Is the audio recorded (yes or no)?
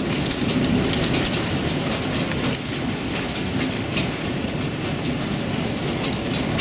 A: yes